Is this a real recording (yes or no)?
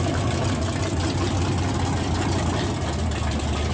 yes